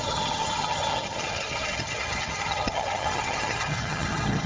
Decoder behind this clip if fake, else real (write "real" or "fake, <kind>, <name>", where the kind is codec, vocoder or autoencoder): fake, vocoder, HiFi-GAN